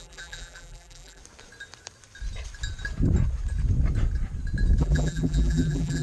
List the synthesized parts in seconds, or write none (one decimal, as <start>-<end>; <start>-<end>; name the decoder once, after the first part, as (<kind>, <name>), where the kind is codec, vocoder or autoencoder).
0.0-1.2 (vocoder, BigVGAN v2); 4.8-6.0